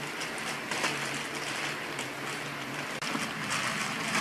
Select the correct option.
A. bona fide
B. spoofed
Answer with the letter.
A